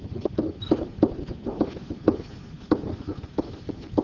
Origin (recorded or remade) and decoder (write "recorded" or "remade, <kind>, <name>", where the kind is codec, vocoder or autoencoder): recorded